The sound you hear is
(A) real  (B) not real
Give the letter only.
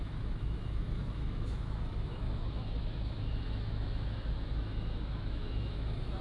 B